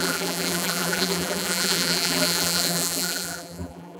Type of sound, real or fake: fake